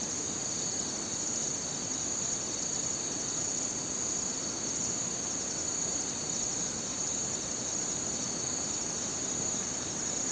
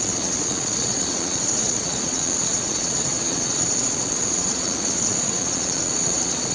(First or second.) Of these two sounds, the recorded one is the first